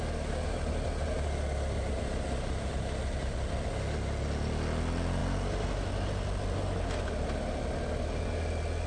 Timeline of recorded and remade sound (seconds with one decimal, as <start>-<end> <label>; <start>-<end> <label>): 0.0-8.9 recorded